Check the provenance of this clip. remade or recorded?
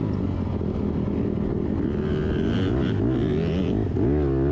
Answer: recorded